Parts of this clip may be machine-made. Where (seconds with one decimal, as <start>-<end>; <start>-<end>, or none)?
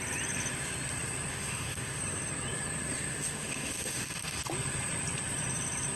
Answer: 1.3-2.0; 3.1-4.4